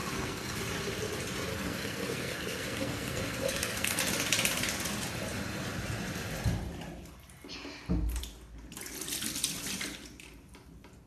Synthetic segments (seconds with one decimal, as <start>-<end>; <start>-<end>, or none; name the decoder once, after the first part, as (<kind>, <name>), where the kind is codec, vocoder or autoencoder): 0.0-0.6 (codec, SNAC); 1.5-4.0